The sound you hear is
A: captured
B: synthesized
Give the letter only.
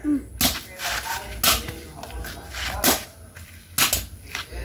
A